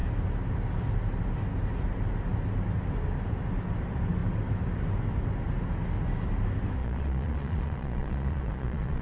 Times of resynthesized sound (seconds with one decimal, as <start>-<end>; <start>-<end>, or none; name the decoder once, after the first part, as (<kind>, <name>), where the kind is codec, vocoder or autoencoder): 6.8-9.0 (vocoder, Vocos)